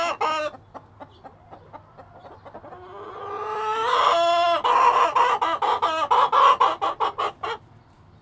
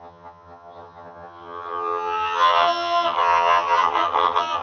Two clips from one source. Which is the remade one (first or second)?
second